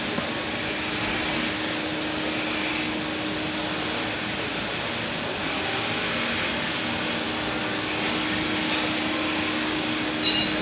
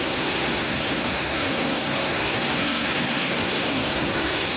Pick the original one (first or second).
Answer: first